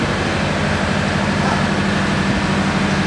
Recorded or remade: recorded